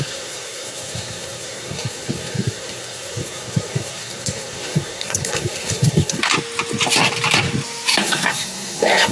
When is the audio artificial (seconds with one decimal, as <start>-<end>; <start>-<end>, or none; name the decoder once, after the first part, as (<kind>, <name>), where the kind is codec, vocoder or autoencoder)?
0.0-6.3 (codec, SNAC); 8.0-9.1